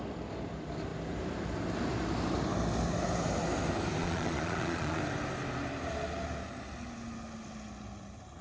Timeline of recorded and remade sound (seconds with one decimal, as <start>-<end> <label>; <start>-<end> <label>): 0.0-4.0 recorded; 4.0-5.0 remade; 5.0-8.4 recorded